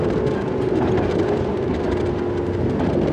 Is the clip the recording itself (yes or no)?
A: yes